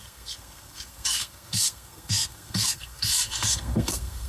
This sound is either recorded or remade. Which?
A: remade